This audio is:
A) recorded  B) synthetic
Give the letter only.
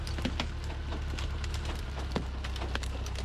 A